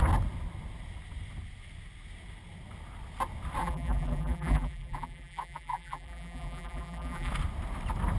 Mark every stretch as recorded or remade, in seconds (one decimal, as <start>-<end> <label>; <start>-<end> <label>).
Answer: 0.0-3.6 recorded; 3.6-7.3 remade; 7.3-8.2 recorded